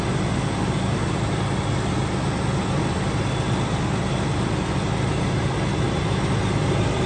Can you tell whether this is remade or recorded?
recorded